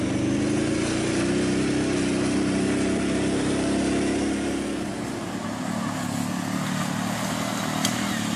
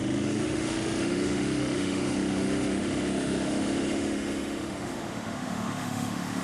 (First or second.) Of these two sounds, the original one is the first